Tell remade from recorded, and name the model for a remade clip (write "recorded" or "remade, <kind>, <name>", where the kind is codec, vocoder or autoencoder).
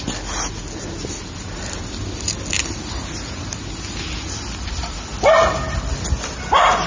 recorded